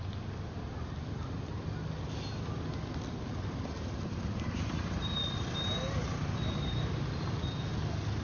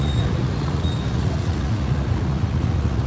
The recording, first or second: first